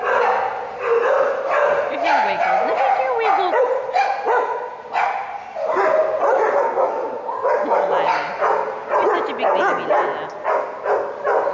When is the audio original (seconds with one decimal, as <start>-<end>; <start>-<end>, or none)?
0.0-7.0; 7.9-11.5